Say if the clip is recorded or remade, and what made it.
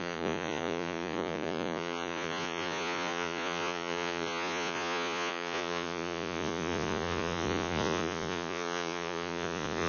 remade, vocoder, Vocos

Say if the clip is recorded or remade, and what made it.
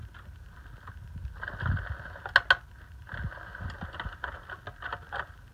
recorded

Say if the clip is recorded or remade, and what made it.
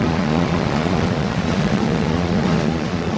remade, vocoder, Vocos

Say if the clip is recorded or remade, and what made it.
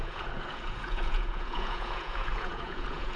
remade, vocoder, Vocos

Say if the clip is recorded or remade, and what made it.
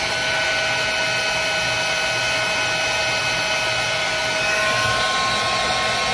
recorded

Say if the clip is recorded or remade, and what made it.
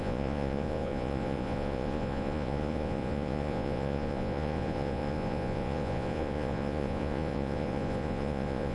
remade, vocoder, Vocos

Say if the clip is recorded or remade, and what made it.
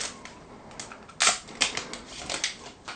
recorded